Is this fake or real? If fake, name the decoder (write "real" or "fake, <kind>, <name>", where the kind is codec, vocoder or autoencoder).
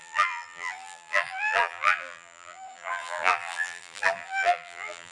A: fake, vocoder, BigVGAN v2